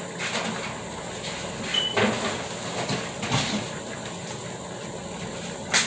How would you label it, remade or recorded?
recorded